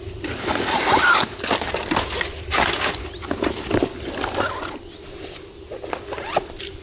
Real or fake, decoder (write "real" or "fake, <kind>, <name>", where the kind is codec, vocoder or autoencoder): real